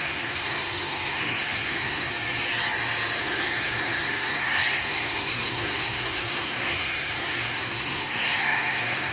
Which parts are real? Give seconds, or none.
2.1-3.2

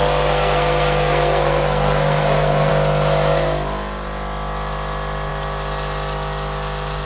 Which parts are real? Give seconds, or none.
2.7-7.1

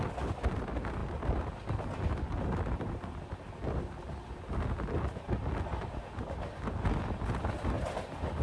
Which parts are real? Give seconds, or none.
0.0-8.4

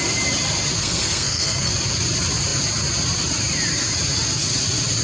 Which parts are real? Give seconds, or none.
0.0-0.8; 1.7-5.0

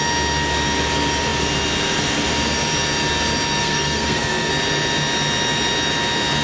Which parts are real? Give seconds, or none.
0.0-3.6; 4.5-6.4

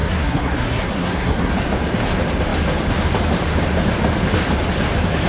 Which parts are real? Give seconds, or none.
1.5-5.3

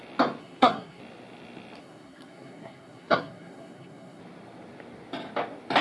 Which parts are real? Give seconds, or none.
0.0-0.4; 1.0-1.8; 4.2-5.8